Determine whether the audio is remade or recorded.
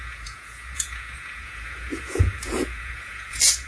remade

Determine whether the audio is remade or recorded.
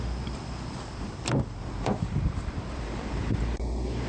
remade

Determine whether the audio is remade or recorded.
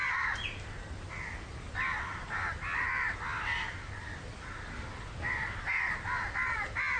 recorded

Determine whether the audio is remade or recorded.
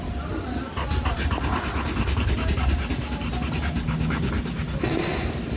recorded